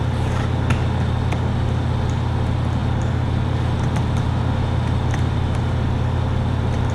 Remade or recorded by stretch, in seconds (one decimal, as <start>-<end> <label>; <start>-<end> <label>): 0.0-6.9 recorded